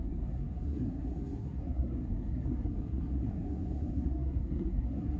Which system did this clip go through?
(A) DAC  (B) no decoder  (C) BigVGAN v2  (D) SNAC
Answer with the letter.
D